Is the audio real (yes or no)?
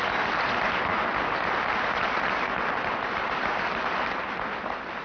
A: yes